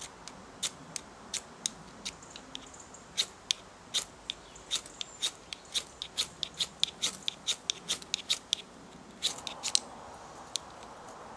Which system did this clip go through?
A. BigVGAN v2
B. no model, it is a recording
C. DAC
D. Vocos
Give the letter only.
B